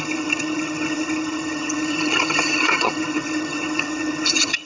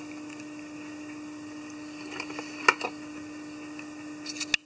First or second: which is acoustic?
second